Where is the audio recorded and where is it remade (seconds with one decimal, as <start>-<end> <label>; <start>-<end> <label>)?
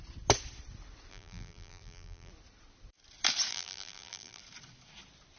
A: 0.0-1.1 recorded; 1.1-2.3 remade; 2.3-3.5 recorded; 3.5-4.4 remade; 4.4-5.4 recorded